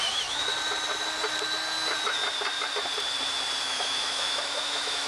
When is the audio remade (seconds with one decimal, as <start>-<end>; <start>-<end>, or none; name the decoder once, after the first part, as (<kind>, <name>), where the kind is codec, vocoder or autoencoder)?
0.0-0.5 (autoencoder, DAC-VAE); 3.6-5.1